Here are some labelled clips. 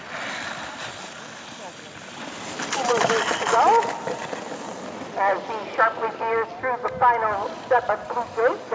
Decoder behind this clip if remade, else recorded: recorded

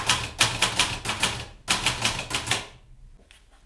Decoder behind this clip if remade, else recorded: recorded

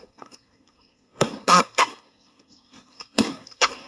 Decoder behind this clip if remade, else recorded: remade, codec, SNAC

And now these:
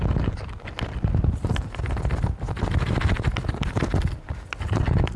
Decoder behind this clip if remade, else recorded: recorded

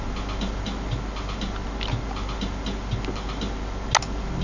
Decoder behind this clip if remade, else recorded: recorded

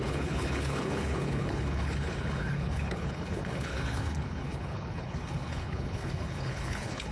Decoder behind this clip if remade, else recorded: remade, codec, HILCodec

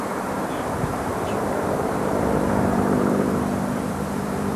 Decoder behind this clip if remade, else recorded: remade, vocoder, BigVGAN v2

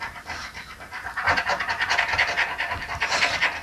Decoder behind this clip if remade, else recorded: recorded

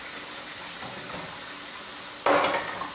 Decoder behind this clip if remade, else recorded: recorded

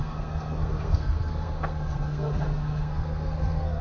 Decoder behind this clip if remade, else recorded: remade, codec, SNAC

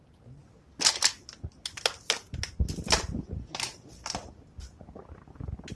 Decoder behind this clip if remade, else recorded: recorded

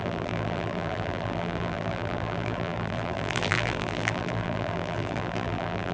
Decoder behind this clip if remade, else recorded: remade, vocoder, BigVGAN v2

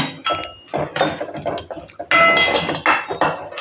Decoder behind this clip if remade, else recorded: recorded